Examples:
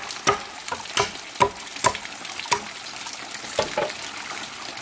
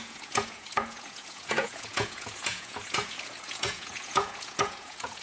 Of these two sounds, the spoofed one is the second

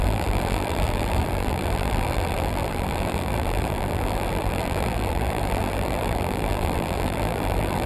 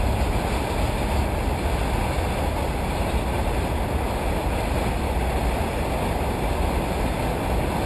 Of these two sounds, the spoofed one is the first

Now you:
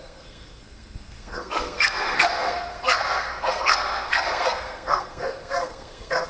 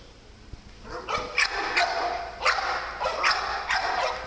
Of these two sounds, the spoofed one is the first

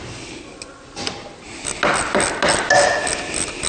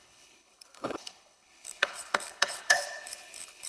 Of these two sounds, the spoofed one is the second